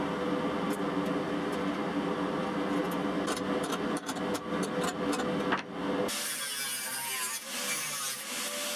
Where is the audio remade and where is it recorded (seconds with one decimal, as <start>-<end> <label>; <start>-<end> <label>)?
0.0-8.8 recorded